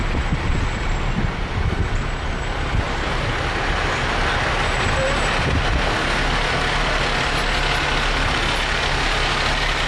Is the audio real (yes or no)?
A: yes